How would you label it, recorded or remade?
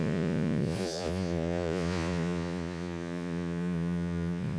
remade